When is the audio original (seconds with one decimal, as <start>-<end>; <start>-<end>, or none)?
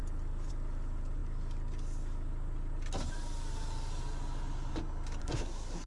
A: 0.0-5.2